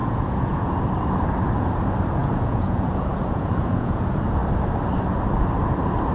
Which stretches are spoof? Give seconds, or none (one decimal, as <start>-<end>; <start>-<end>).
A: 0.0-0.8; 2.2-4.0